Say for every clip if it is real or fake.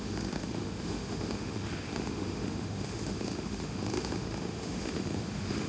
fake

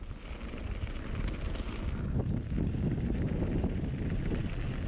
real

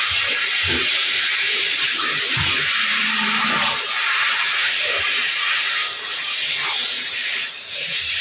fake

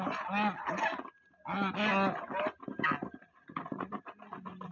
real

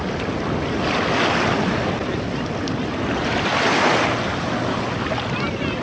real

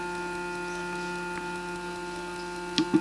real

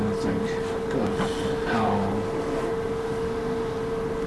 real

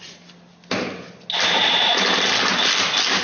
real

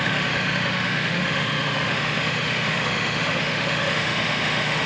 fake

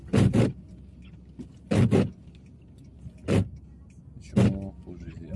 real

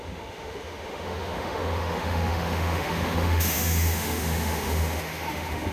fake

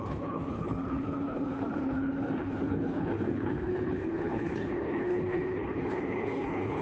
fake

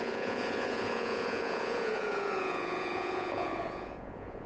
fake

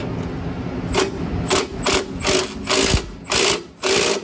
real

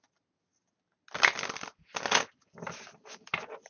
real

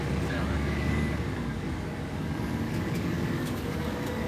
fake